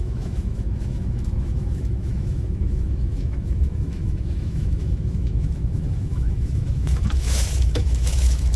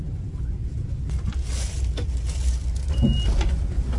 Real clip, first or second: second